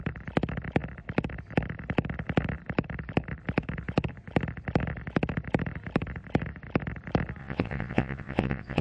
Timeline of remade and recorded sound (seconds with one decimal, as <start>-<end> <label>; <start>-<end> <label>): 0.0-7.4 recorded; 7.4-8.8 remade